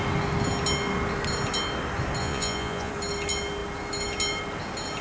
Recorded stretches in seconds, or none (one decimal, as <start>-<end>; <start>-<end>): 0.0-2.2; 2.9-5.0